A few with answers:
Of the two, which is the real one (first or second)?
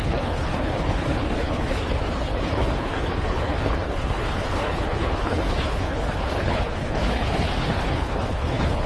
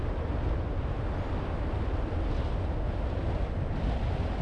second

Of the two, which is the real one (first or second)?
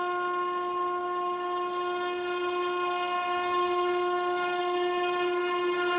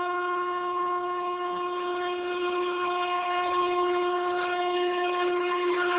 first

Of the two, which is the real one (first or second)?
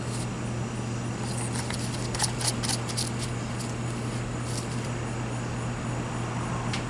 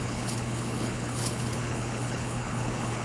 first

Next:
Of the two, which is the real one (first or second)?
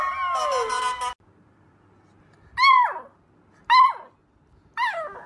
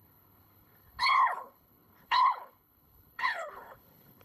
first